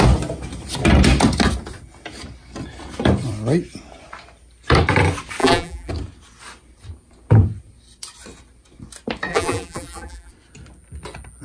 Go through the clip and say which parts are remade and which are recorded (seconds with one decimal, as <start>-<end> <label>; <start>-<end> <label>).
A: 0.0-5.4 recorded; 5.4-5.9 remade; 5.9-9.3 recorded; 9.3-10.3 remade; 10.3-11.4 recorded